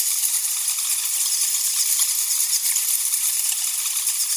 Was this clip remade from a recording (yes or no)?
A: no